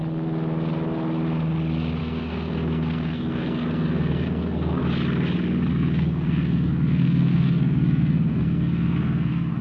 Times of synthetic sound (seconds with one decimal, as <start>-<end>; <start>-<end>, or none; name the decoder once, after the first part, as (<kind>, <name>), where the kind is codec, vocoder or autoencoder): 2.0-4.8 (codec, SNAC); 5.7-9.6